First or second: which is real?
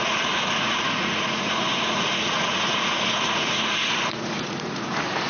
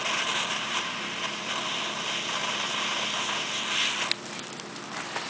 second